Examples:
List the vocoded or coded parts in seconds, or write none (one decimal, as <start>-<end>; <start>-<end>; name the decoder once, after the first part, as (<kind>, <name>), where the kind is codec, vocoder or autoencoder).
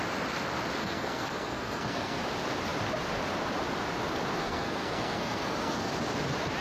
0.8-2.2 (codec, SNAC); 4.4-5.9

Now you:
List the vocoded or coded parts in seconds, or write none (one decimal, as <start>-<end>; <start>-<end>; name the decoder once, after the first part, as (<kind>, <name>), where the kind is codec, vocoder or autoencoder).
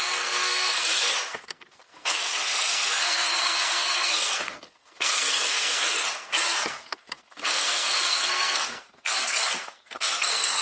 0.0-10.6 (codec, SNAC)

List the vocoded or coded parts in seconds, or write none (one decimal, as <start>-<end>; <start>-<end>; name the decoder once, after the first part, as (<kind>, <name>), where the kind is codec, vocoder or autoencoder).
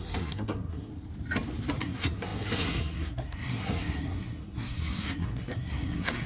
0.0-0.9 (codec, SNAC); 1.8-6.3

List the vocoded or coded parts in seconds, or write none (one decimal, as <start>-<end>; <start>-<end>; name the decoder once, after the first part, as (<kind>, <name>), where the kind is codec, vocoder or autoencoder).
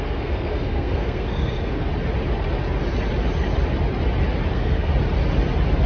0.0-1.9 (codec, SNAC); 4.5-4.9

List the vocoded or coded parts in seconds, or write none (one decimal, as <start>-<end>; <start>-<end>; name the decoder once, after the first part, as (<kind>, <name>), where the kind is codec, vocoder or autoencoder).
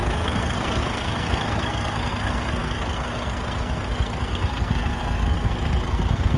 0.0-6.4 (codec, SNAC)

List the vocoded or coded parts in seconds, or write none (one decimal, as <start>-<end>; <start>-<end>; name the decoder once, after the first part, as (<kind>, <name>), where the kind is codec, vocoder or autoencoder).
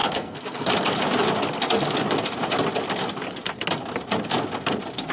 0.0-0.7 (codec, SNAC)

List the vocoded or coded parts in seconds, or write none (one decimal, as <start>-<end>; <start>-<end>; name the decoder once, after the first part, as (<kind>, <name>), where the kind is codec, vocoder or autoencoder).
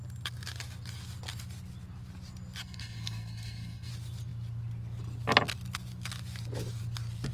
2.6-3.9 (codec, SNAC)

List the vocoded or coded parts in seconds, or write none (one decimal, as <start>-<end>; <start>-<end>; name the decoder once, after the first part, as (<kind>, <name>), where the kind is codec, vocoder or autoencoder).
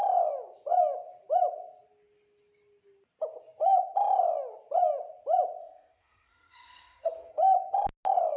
5.6-7.3 (codec, SNAC)